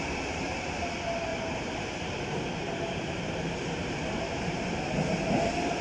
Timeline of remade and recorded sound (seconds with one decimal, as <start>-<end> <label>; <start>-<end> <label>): 0.0-1.3 recorded; 1.3-4.8 remade; 4.8-5.8 recorded

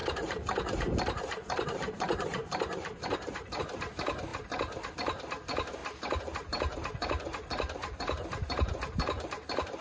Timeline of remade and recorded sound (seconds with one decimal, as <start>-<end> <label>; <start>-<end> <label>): 0.0-3.6 remade; 3.6-5.8 recorded; 5.8-9.8 remade

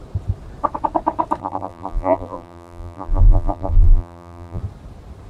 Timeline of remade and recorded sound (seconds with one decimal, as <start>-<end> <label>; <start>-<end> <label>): 0.0-1.4 recorded; 1.4-4.6 remade; 4.6-5.3 recorded

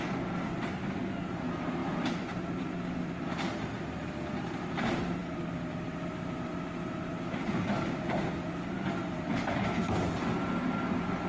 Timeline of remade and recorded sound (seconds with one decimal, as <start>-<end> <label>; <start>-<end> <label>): 0.0-1.8 recorded; 1.8-4.8 remade; 4.8-5.2 recorded; 5.2-7.1 remade; 7.1-11.3 recorded

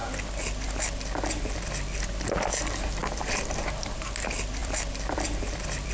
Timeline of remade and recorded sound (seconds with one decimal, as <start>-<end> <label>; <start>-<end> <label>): 0.0-3.0 recorded; 3.0-3.8 remade; 3.8-4.6 recorded; 4.6-5.9 remade

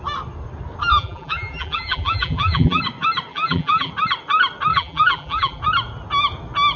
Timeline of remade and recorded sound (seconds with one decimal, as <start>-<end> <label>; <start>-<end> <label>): 0.0-0.9 recorded; 0.9-2.8 remade; 2.8-3.3 recorded; 3.3-3.9 remade; 3.9-4.7 recorded; 4.7-5.6 remade; 5.6-6.8 recorded

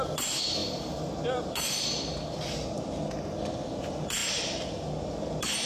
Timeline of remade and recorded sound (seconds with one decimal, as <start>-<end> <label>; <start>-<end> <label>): 0.0-0.6 recorded; 0.6-1.1 remade; 1.1-4.2 recorded; 4.2-5.1 remade; 5.1-5.7 recorded